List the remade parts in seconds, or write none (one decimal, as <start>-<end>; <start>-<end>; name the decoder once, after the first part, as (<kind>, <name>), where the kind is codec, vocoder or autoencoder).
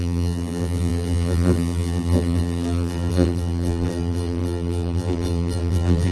0.0-6.1 (vocoder, BigVGAN v2)